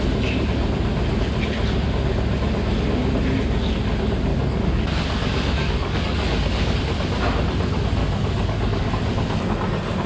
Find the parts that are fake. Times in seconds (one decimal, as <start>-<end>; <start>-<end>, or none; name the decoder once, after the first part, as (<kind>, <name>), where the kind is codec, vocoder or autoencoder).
4.3-6.8 (codec, DAC); 8.0-8.9